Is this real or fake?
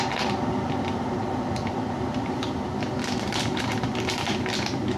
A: fake